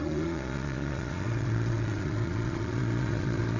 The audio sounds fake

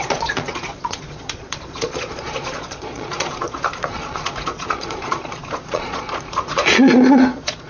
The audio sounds fake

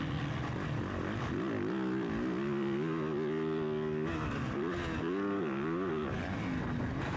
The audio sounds real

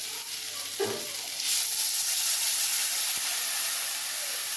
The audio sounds real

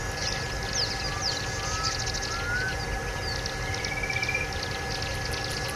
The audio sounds real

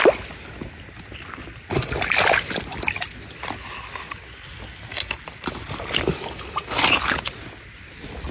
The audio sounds real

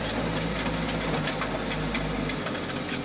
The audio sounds real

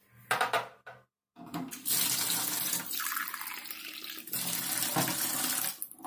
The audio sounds real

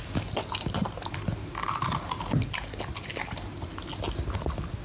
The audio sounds real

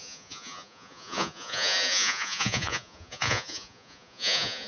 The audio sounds fake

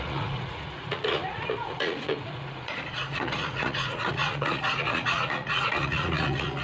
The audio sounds fake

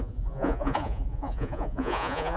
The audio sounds fake